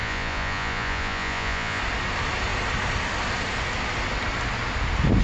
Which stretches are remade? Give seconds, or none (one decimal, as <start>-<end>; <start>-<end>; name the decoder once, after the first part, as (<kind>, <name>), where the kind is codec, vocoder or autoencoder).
0.0-1.8 (vocoder, Vocos)